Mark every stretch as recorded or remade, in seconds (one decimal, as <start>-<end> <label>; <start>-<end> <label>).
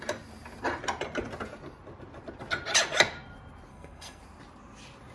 0.0-3.7 recorded; 3.7-4.2 remade; 4.2-5.1 recorded